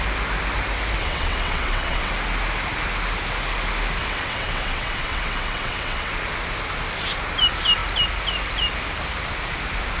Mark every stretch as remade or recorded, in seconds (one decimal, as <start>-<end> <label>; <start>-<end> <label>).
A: 0.0-1.0 recorded; 1.0-2.1 remade; 2.1-4.0 recorded; 4.0-6.1 remade; 6.1-10.0 recorded